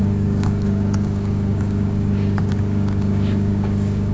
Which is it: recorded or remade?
remade